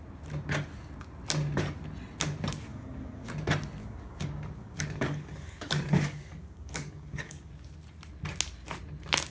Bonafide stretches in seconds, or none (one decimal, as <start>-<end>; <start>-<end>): 0.0-2.7; 3.3-3.8; 7.5-9.3